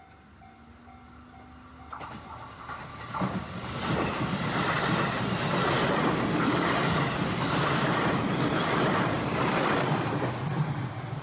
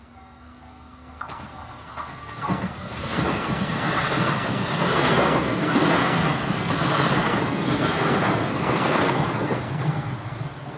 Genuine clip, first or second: first